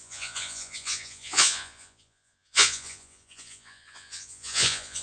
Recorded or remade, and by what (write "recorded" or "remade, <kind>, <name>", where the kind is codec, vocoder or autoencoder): remade, vocoder, Vocos